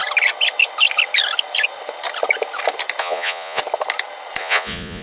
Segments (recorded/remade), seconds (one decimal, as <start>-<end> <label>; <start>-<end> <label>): 0.0-3.0 recorded; 3.0-3.6 remade; 3.6-4.4 recorded; 4.4-5.0 remade